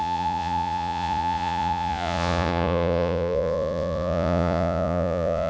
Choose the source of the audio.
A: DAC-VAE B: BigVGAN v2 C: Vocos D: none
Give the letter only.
C